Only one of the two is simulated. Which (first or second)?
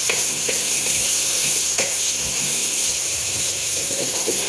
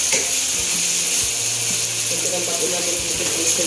first